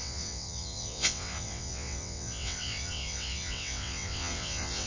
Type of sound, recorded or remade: remade